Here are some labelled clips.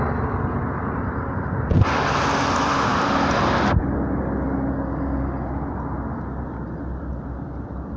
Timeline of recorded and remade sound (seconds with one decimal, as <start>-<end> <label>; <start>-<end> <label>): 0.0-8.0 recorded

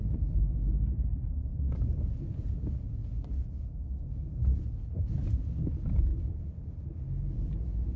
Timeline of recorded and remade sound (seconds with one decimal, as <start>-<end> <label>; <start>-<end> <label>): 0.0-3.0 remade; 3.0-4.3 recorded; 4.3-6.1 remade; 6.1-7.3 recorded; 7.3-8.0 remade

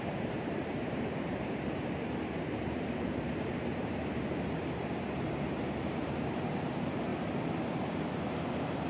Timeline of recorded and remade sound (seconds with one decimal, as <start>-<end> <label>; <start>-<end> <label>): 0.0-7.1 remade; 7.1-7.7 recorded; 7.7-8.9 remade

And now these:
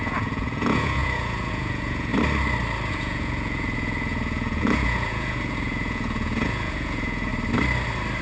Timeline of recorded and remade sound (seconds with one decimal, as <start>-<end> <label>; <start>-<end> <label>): 0.0-2.1 remade; 2.1-2.9 recorded; 2.9-7.3 remade; 7.3-8.2 recorded

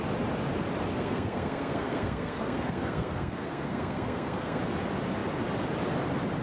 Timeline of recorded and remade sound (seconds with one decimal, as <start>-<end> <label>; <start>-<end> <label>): 0.0-0.9 recorded; 0.9-4.6 remade; 4.6-6.4 recorded